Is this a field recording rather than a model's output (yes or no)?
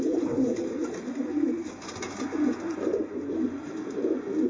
yes